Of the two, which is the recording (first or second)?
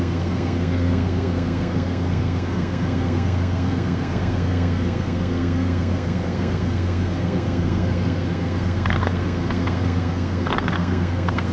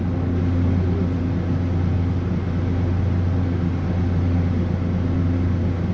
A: second